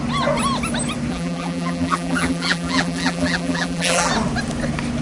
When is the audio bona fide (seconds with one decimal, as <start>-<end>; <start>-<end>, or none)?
0.0-1.1; 4.1-5.0